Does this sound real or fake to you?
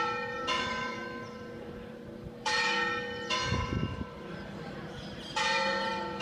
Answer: fake